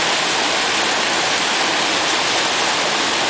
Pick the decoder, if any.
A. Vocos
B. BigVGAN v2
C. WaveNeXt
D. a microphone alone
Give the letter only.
D